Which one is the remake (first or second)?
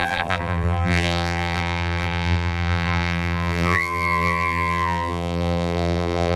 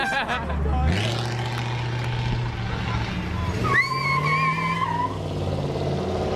first